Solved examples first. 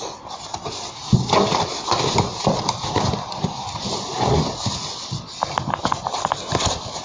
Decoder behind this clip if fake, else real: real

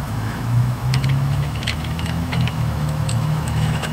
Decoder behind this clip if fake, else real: fake, autoencoder, DAC-VAE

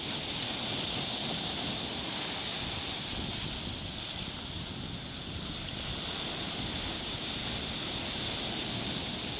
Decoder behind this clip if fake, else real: real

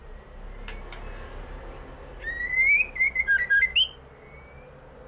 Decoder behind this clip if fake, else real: real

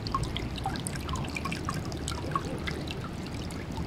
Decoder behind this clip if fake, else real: real